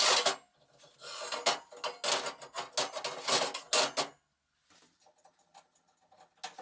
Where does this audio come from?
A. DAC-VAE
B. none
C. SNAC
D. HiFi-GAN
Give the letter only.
B